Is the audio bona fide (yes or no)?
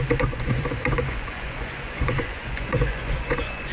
no